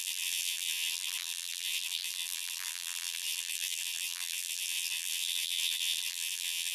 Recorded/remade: remade